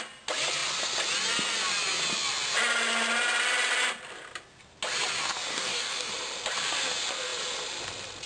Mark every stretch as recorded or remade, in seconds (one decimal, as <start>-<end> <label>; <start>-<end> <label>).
0.0-5.5 recorded; 5.5-6.1 remade; 6.1-8.3 recorded